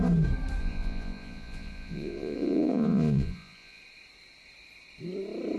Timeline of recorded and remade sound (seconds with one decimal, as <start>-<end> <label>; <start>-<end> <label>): 0.0-0.6 recorded; 0.6-3.8 remade; 3.8-5.6 recorded